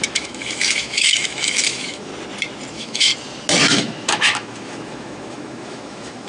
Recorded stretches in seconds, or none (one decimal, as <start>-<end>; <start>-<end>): 2.1-2.7; 3.1-3.6